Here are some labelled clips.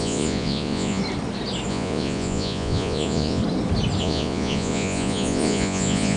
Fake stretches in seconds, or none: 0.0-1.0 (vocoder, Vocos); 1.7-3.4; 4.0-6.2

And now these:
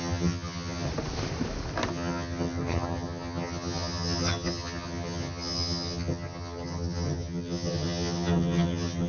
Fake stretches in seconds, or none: 0.0-0.9 (vocoder, HiFi-GAN); 1.9-9.1

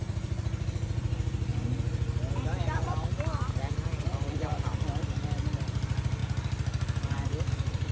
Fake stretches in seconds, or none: 0.0-1.5 (vocoder, BigVGAN v2); 4.0-6.2; 7.5-7.9

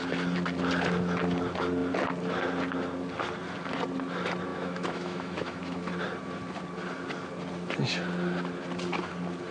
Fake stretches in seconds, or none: 4.5-5.8 (autoencoder, DAC-VAE)

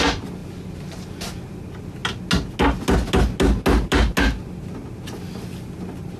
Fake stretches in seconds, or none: none

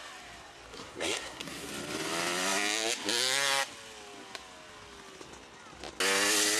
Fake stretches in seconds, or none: 0.7-1.7 (codec, SNAC)